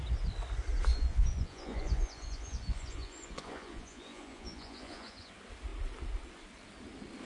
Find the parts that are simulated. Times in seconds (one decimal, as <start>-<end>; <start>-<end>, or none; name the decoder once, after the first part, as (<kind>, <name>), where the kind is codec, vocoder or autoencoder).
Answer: 0.9-5.3 (vocoder, Vocos)